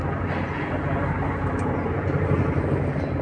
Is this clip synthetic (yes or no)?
no